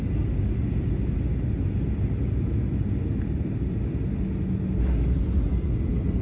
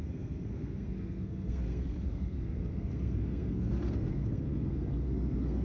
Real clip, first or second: first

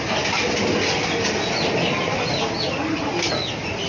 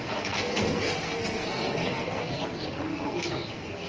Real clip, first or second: first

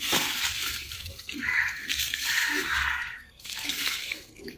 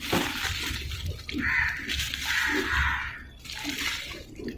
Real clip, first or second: second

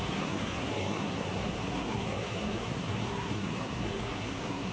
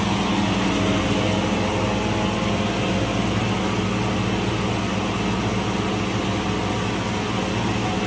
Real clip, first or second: second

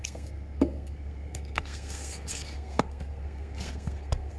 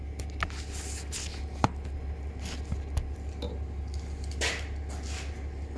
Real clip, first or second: second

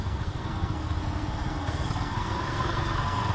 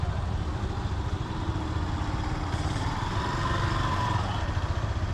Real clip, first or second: second